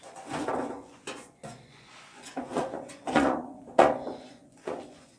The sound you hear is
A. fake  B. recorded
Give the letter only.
A